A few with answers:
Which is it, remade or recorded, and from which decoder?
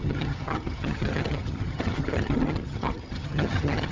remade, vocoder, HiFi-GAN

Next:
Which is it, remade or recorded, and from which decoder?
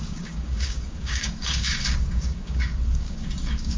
remade, codec, DAC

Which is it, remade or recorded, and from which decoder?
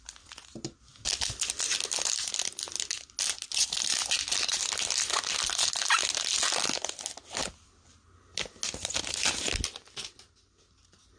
recorded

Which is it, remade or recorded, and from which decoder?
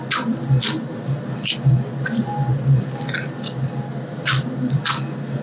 recorded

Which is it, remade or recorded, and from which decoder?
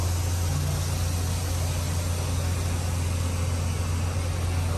recorded